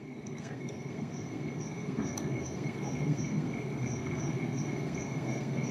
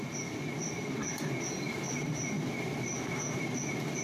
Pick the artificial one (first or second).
first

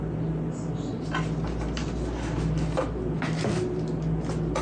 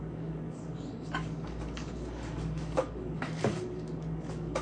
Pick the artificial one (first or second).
second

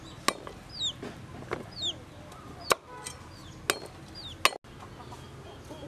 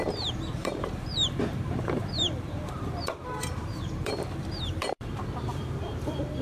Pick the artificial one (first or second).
second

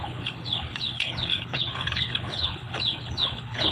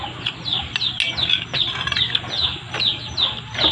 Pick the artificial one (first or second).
first